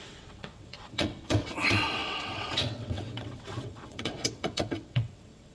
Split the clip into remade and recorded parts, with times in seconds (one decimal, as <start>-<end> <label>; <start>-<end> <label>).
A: 0.0-5.5 remade